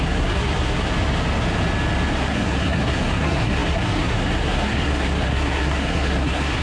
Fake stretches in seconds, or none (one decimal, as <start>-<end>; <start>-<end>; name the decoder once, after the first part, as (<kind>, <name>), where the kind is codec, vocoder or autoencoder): 0.0-0.9 (codec, SNAC); 2.1-6.6